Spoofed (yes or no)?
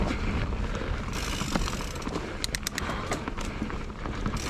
no